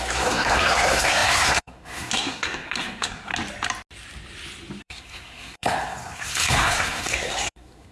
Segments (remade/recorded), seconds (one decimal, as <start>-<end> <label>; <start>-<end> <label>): 0.0-3.3 remade; 3.3-4.8 recorded; 4.8-7.9 remade